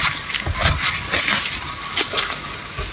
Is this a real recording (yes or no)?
yes